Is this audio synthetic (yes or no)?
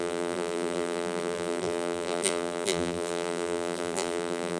yes